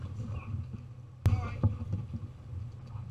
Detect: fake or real real